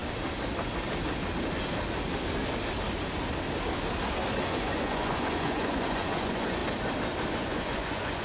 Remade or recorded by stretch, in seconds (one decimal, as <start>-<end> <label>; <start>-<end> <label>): 0.0-4.5 recorded; 4.5-6.6 remade; 6.6-7.3 recorded; 7.3-8.2 remade